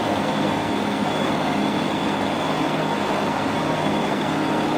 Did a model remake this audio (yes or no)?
yes